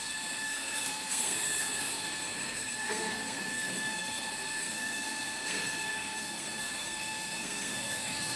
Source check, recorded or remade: remade